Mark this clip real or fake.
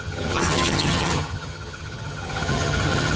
fake